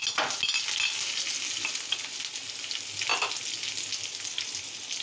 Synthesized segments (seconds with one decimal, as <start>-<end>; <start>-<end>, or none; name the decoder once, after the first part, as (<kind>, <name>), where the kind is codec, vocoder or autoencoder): none